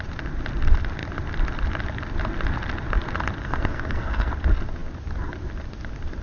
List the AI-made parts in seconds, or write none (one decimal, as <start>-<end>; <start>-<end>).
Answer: 3.4-4.3